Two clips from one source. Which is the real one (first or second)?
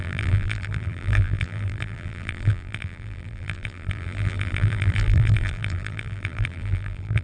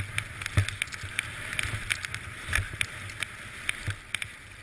second